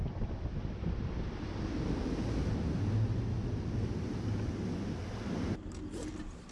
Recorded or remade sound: recorded